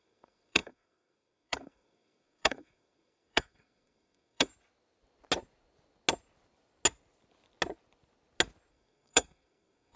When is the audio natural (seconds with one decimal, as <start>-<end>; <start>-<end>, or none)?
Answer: 4.5-8.7